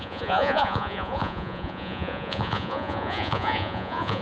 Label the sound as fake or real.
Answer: fake